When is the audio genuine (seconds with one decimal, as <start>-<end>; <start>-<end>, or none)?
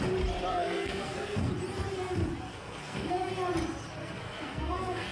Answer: 0.0-0.5; 1.5-2.5; 3.3-4.0